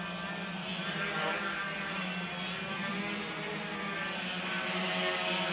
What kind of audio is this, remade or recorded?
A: recorded